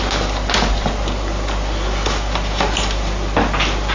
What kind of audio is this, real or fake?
real